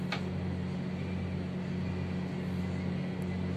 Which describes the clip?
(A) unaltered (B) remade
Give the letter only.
A